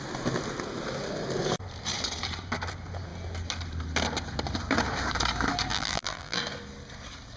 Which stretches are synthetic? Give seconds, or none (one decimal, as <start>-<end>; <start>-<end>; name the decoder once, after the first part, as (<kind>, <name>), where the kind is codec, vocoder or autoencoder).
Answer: 5.7-6.4 (vocoder, BigVGAN v2)